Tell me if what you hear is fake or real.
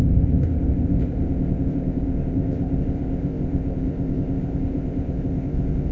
fake